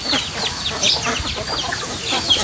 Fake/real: real